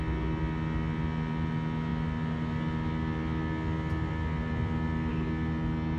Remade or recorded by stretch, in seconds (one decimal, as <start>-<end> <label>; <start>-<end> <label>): 0.0-6.0 recorded